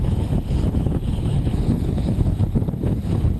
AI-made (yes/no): yes